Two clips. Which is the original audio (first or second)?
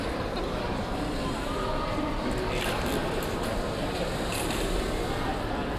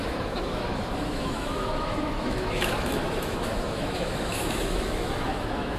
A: first